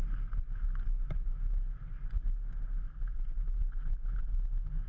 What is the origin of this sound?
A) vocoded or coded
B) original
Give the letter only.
B